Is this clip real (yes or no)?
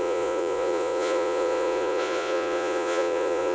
no